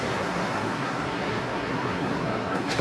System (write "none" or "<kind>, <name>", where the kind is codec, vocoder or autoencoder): codec, SNAC